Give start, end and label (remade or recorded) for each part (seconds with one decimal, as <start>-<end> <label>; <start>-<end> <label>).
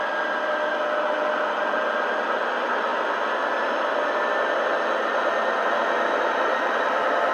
0.0-7.3 recorded